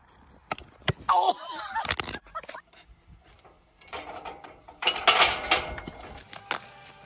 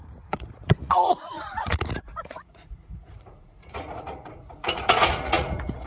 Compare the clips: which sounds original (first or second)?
first